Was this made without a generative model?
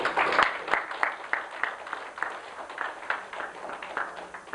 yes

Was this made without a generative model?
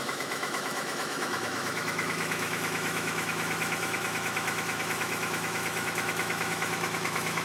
no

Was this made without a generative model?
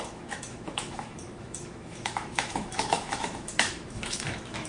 no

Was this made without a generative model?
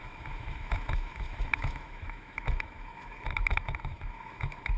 no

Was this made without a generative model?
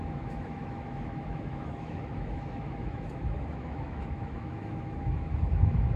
no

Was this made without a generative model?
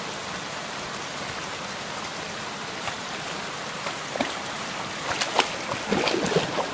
yes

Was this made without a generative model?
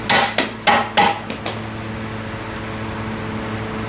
yes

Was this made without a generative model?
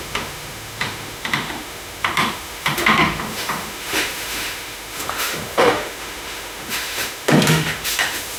no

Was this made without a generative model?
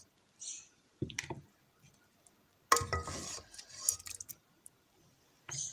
yes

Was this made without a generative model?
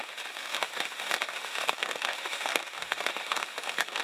no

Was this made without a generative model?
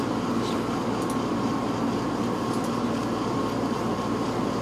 yes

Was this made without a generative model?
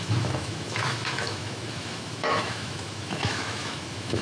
no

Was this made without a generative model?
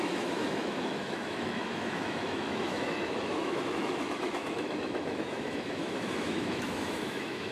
no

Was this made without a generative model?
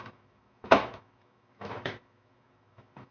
no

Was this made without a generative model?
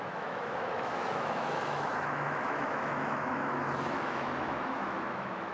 no